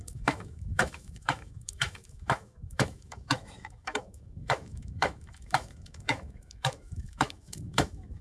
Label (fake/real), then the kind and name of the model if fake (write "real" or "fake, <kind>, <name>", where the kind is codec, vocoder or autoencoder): fake, autoencoder, DAC-VAE